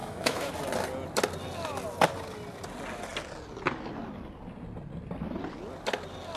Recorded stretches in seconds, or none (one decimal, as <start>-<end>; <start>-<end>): 0.5-6.4